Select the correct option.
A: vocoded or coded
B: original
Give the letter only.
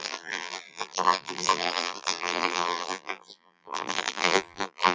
A